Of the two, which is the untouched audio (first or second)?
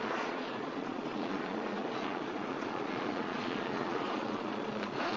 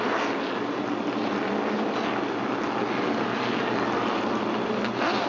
second